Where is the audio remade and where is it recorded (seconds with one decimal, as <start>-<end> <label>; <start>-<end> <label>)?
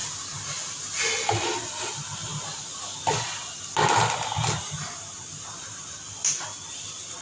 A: 0.0-7.2 recorded